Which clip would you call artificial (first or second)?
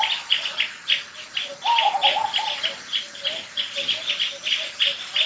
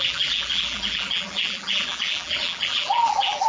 second